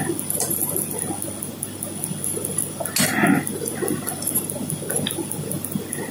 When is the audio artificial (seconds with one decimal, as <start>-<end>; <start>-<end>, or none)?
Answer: none